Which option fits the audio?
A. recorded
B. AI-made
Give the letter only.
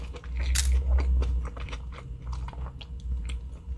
A